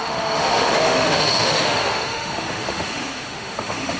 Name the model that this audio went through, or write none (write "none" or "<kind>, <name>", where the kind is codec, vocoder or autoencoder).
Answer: autoencoder, DAC-VAE